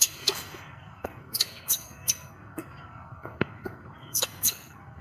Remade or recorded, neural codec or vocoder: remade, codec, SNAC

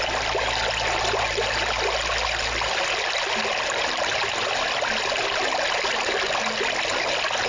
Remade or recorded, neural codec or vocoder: recorded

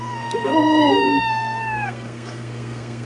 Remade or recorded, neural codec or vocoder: remade, codec, SNAC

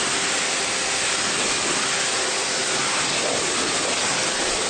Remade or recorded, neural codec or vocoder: recorded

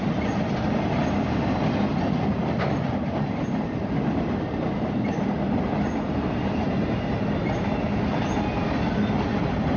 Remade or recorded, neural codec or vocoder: recorded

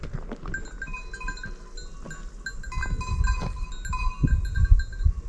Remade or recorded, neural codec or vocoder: recorded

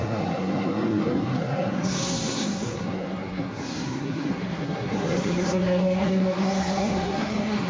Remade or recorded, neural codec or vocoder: remade, codec, SNAC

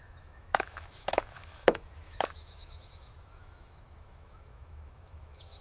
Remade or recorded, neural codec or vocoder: remade, autoencoder, DAC-VAE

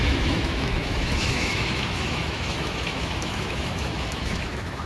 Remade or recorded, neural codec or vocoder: remade, autoencoder, DAC-VAE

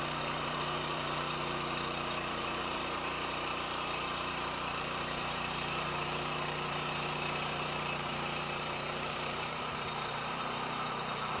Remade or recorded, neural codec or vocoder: remade, vocoder, BigVGAN v2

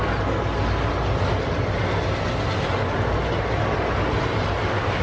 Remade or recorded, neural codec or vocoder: recorded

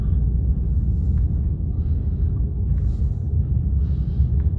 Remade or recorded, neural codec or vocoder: recorded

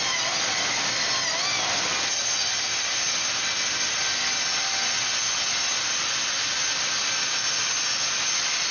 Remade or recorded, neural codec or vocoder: recorded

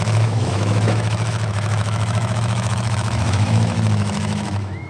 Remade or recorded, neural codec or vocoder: remade, autoencoder, DAC-VAE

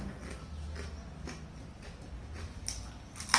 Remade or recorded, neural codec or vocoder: recorded